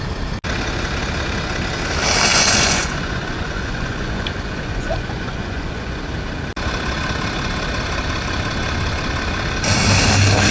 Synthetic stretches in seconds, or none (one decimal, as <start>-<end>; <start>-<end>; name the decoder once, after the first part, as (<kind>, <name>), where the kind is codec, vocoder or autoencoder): 2.3-6.0 (vocoder, Vocos)